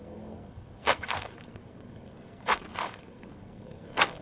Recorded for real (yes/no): no